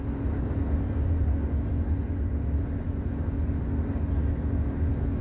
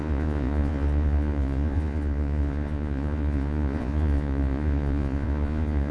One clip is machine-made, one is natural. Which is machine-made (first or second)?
second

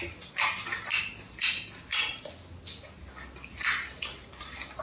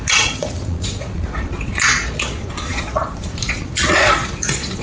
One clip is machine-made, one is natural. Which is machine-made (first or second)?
second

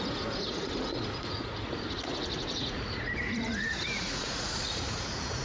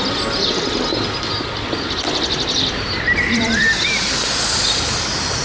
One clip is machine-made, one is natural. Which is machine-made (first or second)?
first